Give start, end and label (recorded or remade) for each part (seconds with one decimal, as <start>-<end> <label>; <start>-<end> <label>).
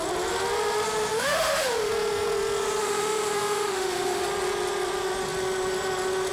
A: 0.0-1.1 recorded; 1.1-1.9 remade; 1.9-2.8 recorded; 2.8-4.2 remade; 4.2-6.3 recorded